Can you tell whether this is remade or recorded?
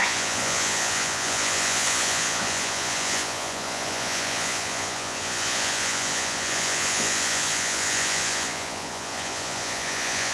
remade